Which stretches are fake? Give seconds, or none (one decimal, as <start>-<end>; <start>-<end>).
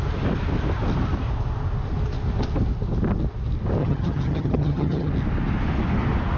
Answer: 3.8-5.1